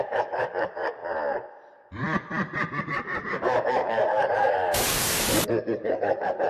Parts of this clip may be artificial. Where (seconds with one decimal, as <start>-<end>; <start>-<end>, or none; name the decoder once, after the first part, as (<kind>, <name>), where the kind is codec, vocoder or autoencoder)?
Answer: 0.0-1.0 (codec, DAC); 2.8-6.5